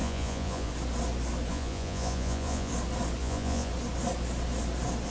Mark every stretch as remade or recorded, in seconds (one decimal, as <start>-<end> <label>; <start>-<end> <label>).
0.0-0.7 remade; 0.7-1.5 recorded; 1.5-2.7 remade; 2.7-3.2 recorded; 3.2-3.7 remade; 3.7-5.1 recorded